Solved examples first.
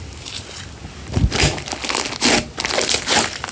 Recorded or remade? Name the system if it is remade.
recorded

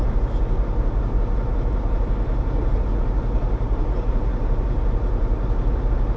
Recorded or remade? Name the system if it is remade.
recorded